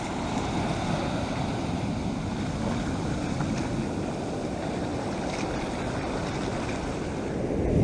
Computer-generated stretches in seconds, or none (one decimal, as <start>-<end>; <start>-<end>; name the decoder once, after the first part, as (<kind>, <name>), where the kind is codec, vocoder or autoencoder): none